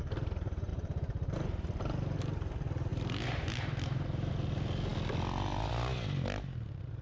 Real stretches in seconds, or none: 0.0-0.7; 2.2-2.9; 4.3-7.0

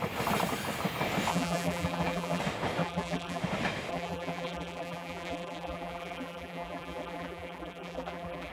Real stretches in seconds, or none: 0.0-1.3; 2.4-2.8; 3.4-3.9